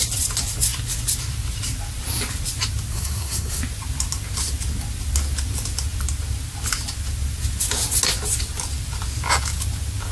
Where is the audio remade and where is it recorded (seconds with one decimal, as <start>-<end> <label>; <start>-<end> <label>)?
0.0-2.9 recorded; 2.9-3.6 remade; 3.6-10.1 recorded